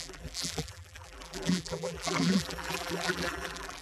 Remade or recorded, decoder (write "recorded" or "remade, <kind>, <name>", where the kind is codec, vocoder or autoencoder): remade, vocoder, BigVGAN v2